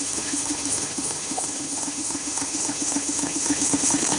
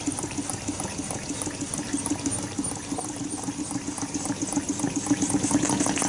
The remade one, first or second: first